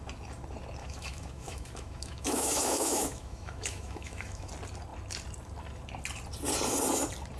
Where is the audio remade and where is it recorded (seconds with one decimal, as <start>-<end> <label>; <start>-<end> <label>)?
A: 0.0-0.8 recorded; 0.8-4.5 remade; 4.5-7.4 recorded